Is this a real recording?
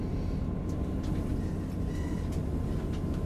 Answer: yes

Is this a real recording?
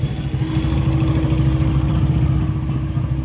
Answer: yes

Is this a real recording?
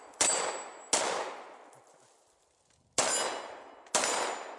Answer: yes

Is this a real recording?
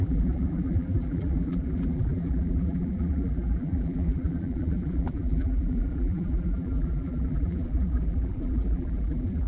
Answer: no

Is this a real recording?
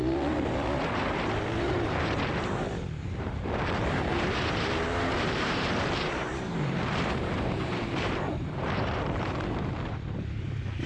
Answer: no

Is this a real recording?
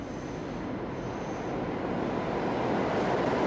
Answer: yes